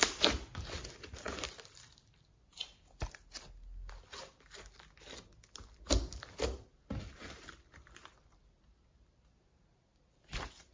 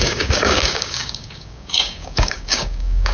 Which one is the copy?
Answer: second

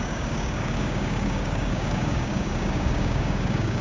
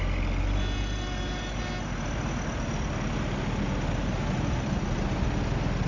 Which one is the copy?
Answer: first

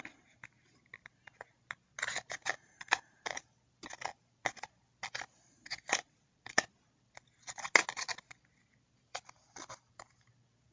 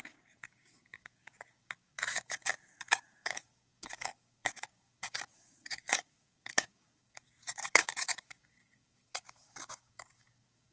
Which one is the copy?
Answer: second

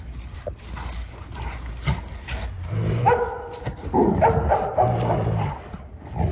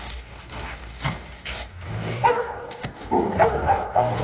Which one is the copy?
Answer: second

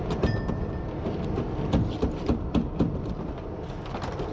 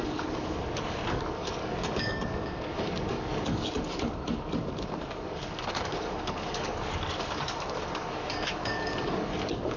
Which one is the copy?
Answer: second